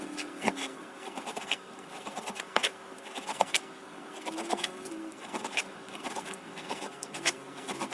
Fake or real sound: fake